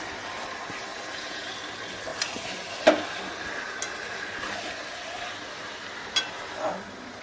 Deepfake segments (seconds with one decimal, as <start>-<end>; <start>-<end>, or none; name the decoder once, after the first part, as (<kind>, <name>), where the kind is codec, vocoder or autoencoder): 0.9-1.5 (vocoder, Vocos)